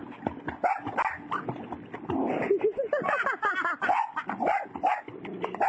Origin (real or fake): real